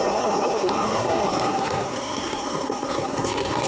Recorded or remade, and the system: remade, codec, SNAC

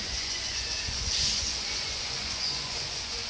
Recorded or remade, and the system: remade, vocoder, Vocos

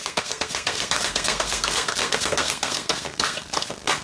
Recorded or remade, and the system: remade, codec, SNAC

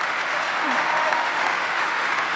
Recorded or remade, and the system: remade, autoencoder, DAC-VAE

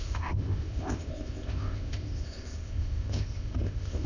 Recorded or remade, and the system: remade, codec, ZipCodec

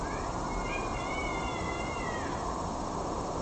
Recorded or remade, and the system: recorded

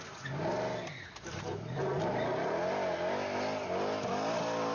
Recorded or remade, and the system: recorded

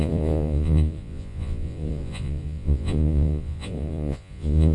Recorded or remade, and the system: remade, vocoder, Vocos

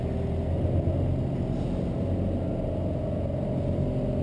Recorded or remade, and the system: recorded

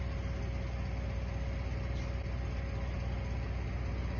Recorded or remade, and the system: recorded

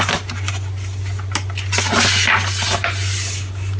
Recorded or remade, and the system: recorded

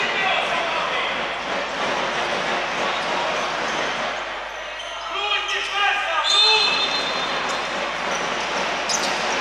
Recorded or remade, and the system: recorded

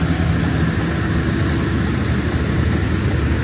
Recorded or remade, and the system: recorded